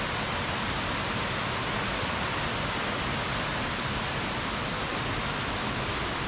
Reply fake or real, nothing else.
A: real